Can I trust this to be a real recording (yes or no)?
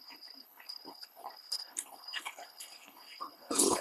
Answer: no